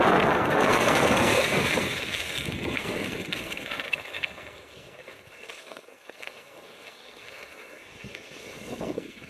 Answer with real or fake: fake